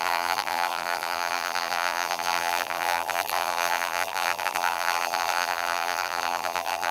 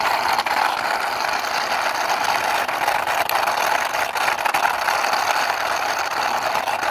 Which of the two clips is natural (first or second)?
second